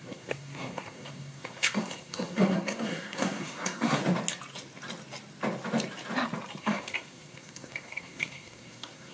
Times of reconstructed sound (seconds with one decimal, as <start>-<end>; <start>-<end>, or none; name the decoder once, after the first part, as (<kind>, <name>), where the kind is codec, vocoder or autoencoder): 0.0-4.0 (codec, SNAC); 6.6-9.1